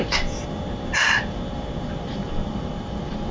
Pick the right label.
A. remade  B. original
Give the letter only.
A